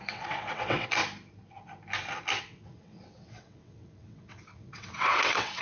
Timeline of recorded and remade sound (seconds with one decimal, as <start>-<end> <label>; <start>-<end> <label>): 0.0-1.0 remade; 1.0-2.4 recorded; 2.4-5.6 remade